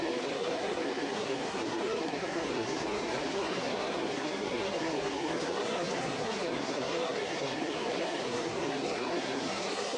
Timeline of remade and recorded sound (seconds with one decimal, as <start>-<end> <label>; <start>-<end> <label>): 0.0-10.0 remade